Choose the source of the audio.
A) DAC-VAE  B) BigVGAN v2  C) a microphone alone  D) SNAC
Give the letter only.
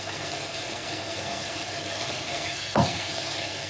D